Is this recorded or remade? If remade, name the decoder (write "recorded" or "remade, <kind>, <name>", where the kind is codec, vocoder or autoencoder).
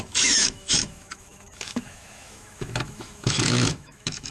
remade, autoencoder, DAC-VAE